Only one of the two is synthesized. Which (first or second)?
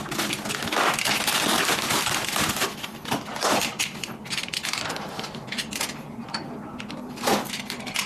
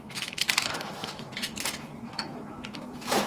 second